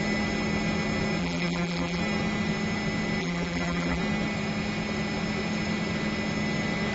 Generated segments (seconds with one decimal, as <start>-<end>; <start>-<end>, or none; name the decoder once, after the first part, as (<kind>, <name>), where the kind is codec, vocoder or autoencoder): 1.2-2.0 (vocoder, BigVGAN v2); 3.2-4.0